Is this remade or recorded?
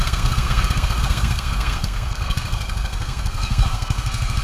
remade